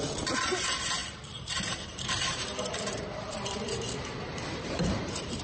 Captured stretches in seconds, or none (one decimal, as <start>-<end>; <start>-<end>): none